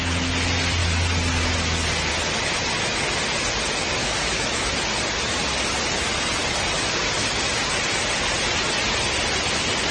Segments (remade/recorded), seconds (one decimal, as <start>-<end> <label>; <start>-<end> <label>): 0.0-4.0 recorded; 4.0-4.6 remade; 4.6-9.9 recorded